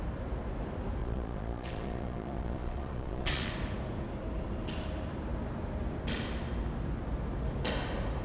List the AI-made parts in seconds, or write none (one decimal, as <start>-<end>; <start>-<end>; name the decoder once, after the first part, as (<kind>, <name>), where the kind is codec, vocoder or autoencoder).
1.0-3.5 (vocoder, Vocos)